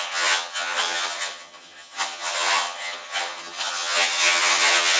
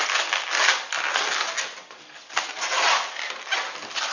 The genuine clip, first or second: second